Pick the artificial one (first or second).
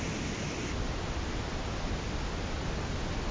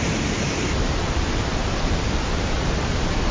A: second